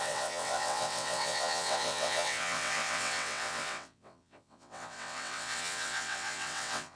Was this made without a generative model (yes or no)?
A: no